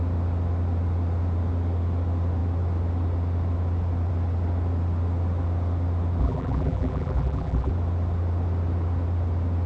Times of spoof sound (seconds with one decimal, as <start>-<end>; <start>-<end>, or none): 6.2-7.7